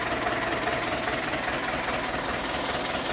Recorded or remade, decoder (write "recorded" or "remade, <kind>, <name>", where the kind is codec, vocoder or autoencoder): recorded